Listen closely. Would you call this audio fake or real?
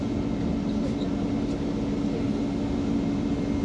real